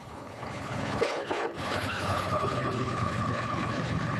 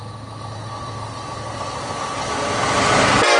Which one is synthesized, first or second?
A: first